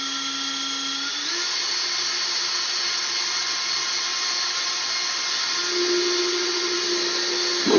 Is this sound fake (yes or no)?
no